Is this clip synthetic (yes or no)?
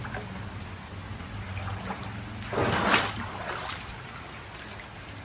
no